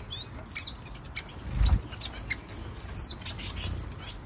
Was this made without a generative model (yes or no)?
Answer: yes